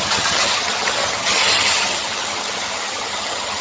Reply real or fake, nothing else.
fake